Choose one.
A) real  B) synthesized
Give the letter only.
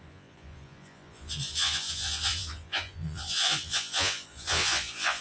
B